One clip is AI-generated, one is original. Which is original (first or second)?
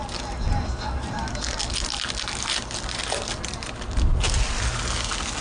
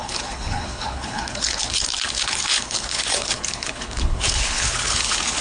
first